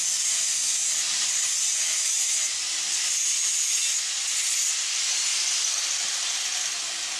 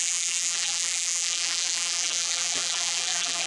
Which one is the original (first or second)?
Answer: first